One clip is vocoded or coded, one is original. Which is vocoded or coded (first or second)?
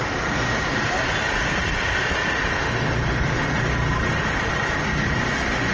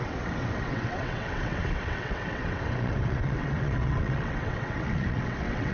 second